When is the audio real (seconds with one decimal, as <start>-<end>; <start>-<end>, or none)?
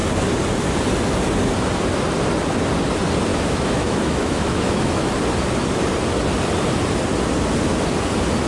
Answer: 0.0-3.3; 5.1-8.5